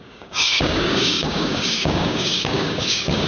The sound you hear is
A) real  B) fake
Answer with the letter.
B